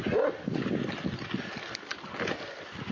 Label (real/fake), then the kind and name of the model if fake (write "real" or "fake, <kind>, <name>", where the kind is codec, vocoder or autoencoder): real